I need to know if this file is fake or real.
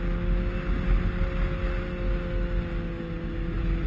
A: real